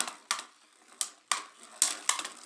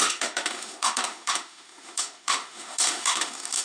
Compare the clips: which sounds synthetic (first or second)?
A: second